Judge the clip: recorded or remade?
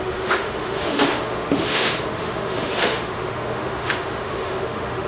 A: remade